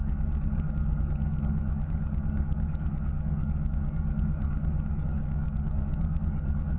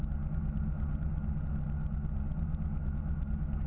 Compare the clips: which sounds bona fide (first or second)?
second